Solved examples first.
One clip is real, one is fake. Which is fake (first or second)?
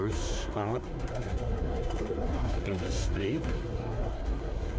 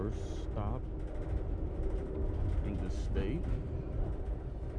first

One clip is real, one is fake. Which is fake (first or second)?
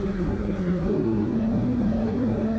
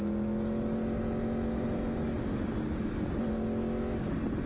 first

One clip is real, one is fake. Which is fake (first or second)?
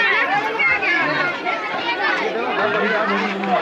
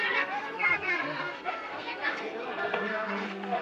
second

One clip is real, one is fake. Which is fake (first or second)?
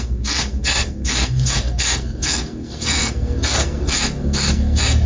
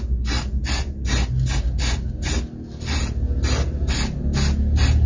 first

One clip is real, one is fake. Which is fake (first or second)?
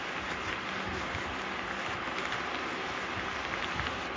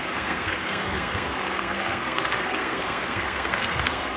second